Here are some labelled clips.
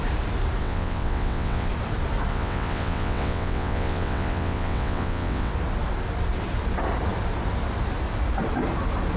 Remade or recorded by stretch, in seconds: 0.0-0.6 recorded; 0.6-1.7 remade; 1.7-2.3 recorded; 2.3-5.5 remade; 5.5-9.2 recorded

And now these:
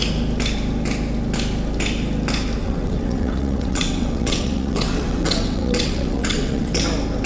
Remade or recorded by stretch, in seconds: 0.0-2.6 recorded; 2.6-6.8 remade; 6.8-7.3 recorded

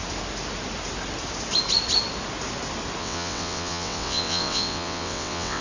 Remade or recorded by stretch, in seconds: 0.0-3.0 recorded; 3.0-5.6 remade

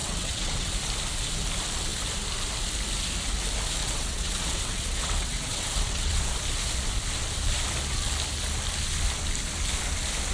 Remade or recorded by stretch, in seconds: 0.0-0.7 remade; 0.7-3.8 recorded; 3.8-6.2 remade; 6.2-10.3 recorded

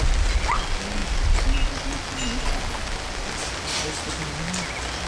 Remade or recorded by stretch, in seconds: 0.0-5.1 recorded

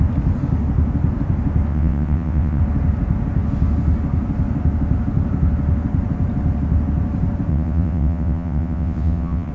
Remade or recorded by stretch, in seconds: 0.0-1.7 recorded; 1.7-2.6 remade; 2.6-7.5 recorded; 7.5-9.5 remade

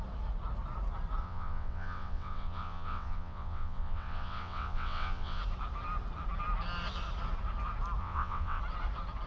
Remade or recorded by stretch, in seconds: 0.0-1.2 recorded; 1.2-5.4 remade; 5.4-8.0 recorded; 8.0-8.6 remade; 8.6-9.3 recorded

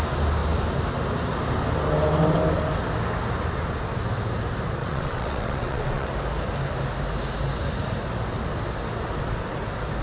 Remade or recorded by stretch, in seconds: 0.0-4.8 recorded; 4.8-6.1 remade; 6.1-10.0 recorded